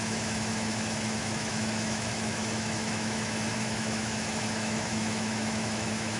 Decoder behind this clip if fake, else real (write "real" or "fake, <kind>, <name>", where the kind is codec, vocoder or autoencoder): fake, autoencoder, DAC-VAE